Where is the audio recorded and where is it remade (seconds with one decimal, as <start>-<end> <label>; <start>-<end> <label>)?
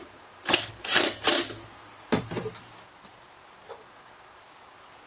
0.0-0.7 recorded; 0.7-1.4 remade; 1.4-4.5 recorded; 4.5-5.1 remade